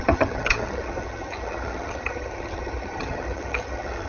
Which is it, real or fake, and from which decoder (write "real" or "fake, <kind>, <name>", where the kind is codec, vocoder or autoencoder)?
fake, vocoder, HiFi-GAN